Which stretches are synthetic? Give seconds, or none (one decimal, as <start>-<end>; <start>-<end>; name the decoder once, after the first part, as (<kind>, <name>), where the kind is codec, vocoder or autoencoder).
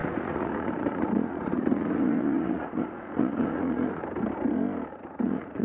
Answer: 0.0-4.0 (vocoder, Vocos); 4.9-5.6